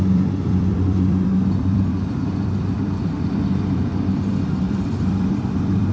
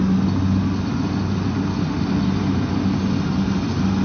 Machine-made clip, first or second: first